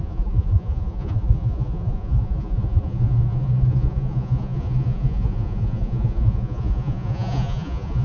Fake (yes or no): yes